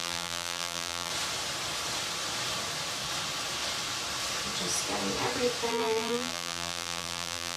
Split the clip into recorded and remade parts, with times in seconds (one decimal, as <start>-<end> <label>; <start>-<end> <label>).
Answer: 0.0-1.1 remade; 1.1-5.7 recorded; 5.7-7.6 remade